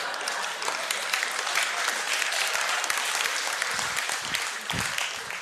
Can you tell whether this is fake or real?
real